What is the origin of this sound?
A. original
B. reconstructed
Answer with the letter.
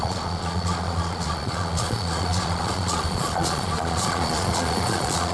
B